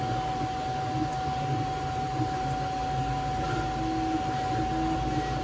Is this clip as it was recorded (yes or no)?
yes